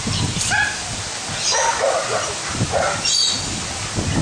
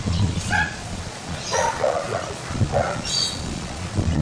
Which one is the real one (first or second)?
first